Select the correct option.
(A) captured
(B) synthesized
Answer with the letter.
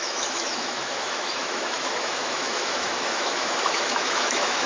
B